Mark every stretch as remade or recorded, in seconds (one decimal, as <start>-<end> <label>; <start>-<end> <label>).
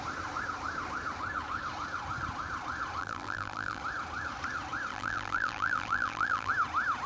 0.0-3.0 recorded; 3.0-3.8 remade; 3.8-4.9 recorded; 4.9-6.5 remade; 6.5-7.1 recorded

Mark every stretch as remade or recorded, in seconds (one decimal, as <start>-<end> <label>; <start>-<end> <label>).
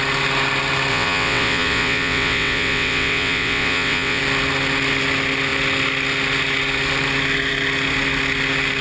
0.0-0.9 recorded; 0.9-4.2 remade; 4.2-8.8 recorded